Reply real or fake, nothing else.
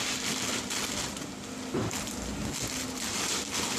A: real